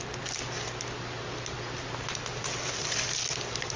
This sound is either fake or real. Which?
real